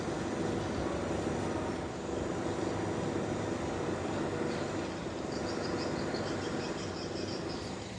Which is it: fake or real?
real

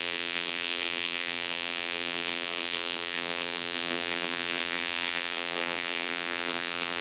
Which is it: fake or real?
fake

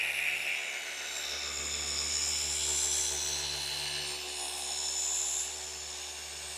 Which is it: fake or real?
real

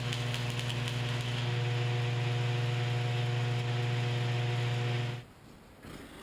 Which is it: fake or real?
real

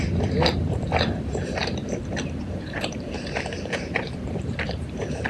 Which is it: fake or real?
fake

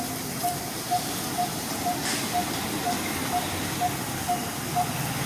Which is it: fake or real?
real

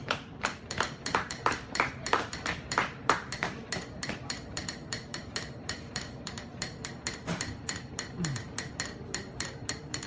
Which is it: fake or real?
fake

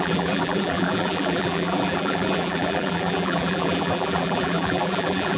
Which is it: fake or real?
fake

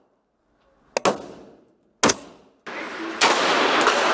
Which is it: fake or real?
real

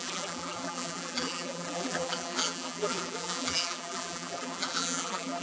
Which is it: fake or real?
fake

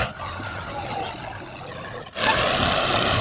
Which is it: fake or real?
real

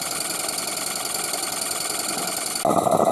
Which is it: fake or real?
real